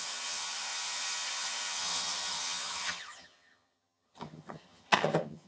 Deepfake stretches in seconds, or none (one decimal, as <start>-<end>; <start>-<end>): 0.0-5.5